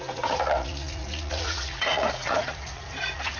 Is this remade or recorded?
remade